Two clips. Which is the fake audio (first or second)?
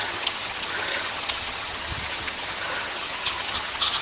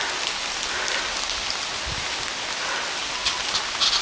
first